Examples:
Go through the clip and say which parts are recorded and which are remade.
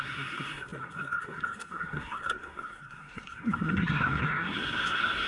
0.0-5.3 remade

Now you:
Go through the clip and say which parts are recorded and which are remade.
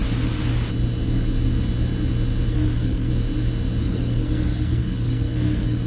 0.0-2.5 recorded; 2.5-3.1 remade; 3.1-3.8 recorded; 3.8-5.9 remade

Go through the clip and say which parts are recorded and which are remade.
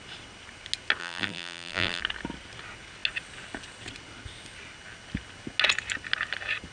0.0-1.0 recorded; 1.0-2.0 remade; 2.0-6.7 recorded